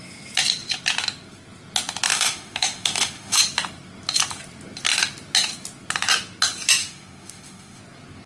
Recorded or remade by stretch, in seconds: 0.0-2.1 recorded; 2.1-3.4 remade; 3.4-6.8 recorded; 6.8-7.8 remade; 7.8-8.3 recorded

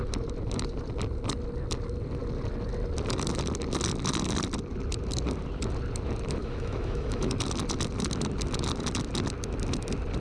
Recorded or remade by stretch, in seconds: 0.0-6.4 recorded; 6.4-7.3 remade; 7.3-10.2 recorded

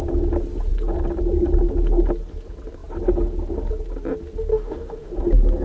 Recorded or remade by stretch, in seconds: 0.0-4.5 recorded; 4.5-5.1 remade; 5.1-5.6 recorded

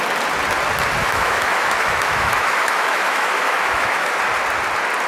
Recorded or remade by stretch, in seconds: 0.0-1.0 recorded; 1.0-4.1 remade; 4.1-5.1 recorded

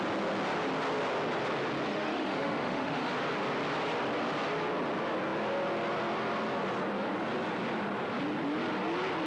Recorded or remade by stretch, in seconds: 0.0-1.9 recorded; 1.9-3.1 remade; 3.1-9.3 recorded

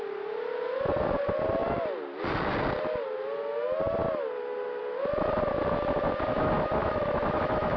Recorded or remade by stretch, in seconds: 0.0-6.8 recorded; 6.8-7.8 remade

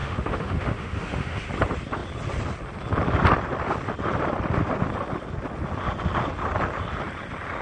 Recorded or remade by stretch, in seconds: 0.0-1.5 remade; 1.5-7.6 recorded

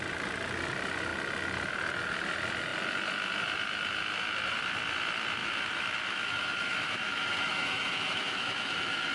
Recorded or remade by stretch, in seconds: 0.0-5.4 recorded; 5.4-9.1 remade